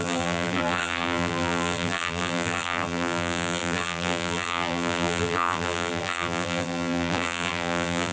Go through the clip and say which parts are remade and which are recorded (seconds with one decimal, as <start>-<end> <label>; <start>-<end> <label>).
0.0-8.1 remade